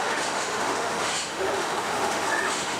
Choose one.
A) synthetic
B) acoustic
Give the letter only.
A